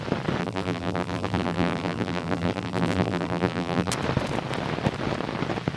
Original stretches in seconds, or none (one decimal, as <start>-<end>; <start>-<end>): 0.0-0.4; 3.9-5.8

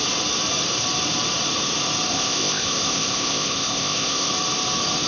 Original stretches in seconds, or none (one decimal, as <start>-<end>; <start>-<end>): 0.0-2.1; 4.3-5.1

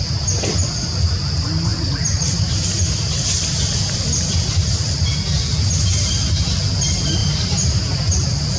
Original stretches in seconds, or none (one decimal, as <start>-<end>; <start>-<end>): 0.0-7.2; 7.8-8.6